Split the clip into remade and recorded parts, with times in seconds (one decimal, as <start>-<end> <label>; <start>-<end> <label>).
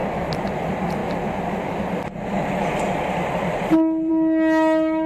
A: 0.0-5.1 recorded